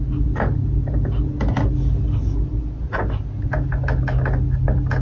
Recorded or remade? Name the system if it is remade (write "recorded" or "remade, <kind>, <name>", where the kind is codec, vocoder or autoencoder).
recorded